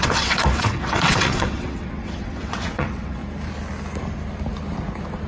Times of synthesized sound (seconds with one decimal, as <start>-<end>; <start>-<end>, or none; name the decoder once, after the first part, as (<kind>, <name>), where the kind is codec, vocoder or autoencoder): 0.0-3.2 (vocoder, WaveNeXt)